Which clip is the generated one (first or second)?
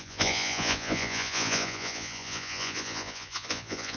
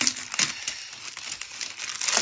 first